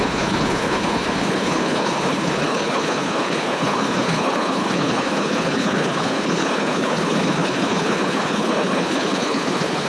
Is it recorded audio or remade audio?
remade